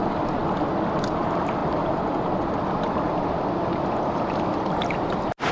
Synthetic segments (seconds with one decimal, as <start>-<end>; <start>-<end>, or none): 0.0-0.4; 1.2-1.6; 4.9-5.5